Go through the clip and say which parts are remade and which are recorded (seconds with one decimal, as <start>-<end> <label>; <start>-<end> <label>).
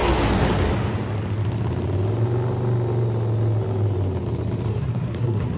0.0-4.7 recorded; 4.7-5.6 remade